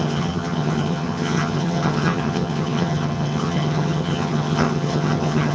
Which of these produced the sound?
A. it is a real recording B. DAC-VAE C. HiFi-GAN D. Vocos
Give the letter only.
C